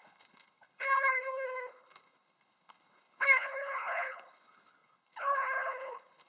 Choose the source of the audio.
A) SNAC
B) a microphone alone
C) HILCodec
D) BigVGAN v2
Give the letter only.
C